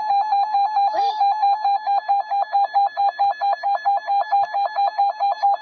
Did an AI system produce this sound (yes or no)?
no